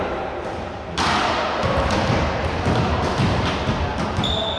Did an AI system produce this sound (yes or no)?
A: no